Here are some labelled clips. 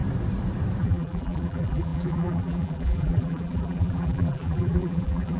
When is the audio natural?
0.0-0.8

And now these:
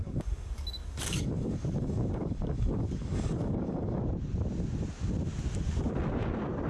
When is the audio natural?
4.0-6.7

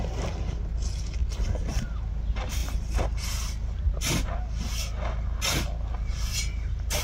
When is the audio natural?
0.0-7.0

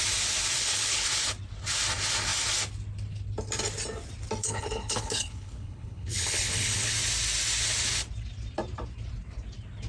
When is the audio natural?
0.0-0.6; 1.1-4.4; 6.9-9.9

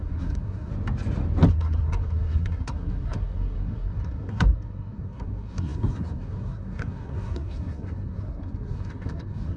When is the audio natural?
0.7-1.5

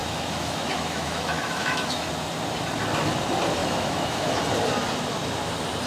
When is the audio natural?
2.1-3.6; 4.4-5.9